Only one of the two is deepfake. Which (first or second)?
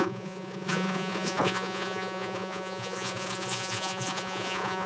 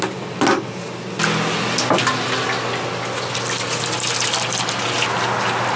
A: first